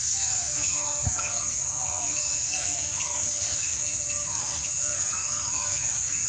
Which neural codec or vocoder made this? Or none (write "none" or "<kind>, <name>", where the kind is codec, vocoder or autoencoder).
codec, SNAC